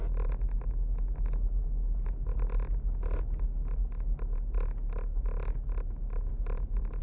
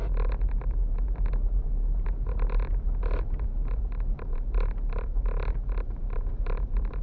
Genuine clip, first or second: first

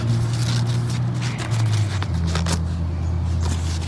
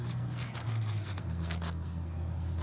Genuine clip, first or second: first